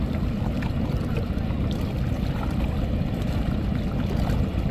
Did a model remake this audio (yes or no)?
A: no